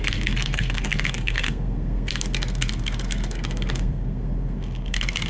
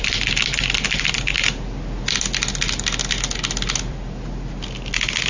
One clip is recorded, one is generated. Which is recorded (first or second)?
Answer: second